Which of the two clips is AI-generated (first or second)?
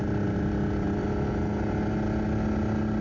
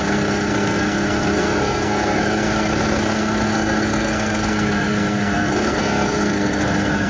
second